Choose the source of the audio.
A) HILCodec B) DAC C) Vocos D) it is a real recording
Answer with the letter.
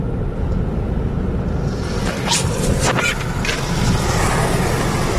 D